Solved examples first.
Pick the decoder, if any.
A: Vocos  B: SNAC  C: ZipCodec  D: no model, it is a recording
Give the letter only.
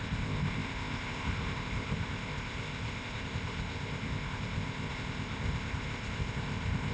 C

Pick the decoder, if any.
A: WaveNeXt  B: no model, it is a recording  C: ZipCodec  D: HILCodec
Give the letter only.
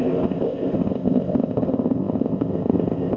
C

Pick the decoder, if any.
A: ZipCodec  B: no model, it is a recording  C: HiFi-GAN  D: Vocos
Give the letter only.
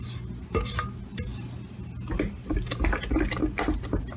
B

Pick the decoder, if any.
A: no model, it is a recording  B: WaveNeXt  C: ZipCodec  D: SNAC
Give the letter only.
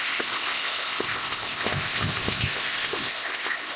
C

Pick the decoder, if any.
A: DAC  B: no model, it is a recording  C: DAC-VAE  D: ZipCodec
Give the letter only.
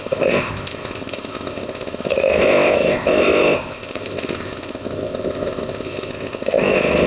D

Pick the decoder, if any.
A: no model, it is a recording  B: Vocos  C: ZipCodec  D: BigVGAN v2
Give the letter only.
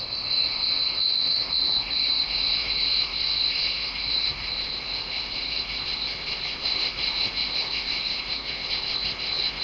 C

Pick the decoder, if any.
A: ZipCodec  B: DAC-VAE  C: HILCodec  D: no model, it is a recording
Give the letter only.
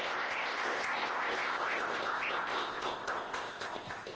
A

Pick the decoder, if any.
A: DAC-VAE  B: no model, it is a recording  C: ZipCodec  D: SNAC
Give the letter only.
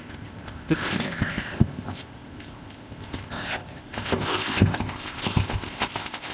C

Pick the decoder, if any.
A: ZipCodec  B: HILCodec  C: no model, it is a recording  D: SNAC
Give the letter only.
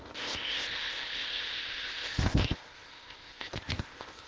A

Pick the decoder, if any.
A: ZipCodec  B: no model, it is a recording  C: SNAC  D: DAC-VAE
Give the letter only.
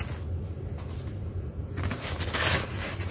B